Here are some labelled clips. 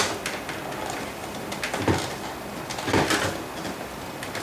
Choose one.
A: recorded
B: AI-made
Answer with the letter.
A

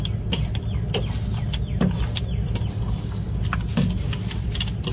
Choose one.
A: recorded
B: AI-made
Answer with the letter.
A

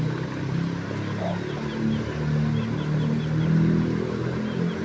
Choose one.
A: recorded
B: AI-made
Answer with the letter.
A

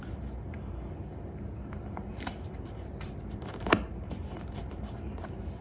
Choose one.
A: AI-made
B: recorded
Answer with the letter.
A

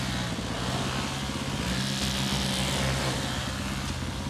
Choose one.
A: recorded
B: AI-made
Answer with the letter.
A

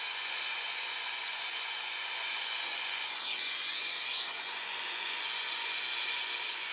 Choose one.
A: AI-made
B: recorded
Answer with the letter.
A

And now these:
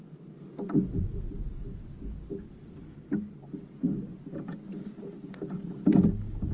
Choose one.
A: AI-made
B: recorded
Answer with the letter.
B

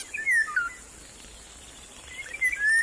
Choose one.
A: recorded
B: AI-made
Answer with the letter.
A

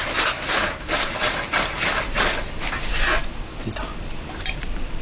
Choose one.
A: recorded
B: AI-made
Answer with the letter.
A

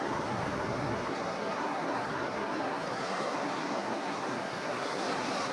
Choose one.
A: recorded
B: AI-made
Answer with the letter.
B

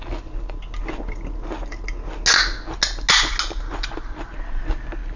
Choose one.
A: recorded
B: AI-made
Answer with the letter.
A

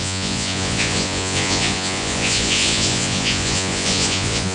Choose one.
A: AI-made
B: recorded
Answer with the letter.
A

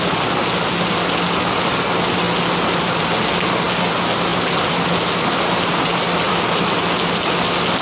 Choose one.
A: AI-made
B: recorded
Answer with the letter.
B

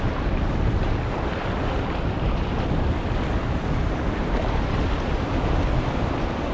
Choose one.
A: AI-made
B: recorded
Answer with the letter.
B